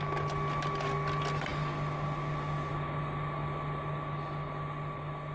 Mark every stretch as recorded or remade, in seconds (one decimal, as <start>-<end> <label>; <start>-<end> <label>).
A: 0.0-5.3 recorded